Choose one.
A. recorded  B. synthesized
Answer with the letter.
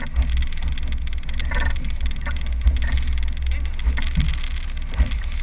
A